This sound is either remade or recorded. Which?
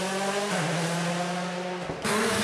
recorded